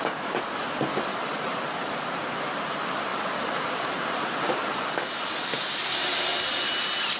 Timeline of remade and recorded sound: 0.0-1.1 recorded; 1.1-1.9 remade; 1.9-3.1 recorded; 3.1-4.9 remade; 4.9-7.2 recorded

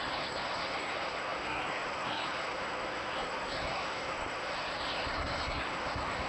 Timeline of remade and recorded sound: 0.0-6.3 remade

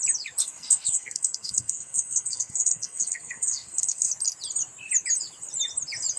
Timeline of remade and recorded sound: 0.0-0.4 recorded; 0.4-4.1 remade; 4.1-6.2 recorded

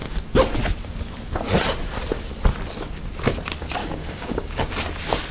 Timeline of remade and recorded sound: 0.0-3.8 recorded; 3.8-4.7 remade; 4.7-5.3 recorded

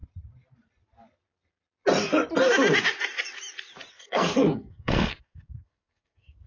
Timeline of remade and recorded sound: 0.0-3.9 recorded; 3.9-6.5 remade